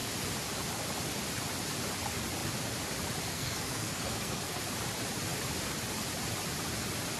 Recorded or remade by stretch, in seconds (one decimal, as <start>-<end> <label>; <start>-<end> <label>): 0.0-3.3 recorded; 3.3-4.6 remade; 4.6-7.2 recorded